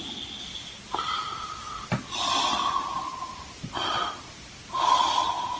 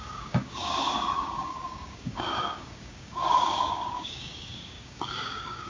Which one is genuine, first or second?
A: first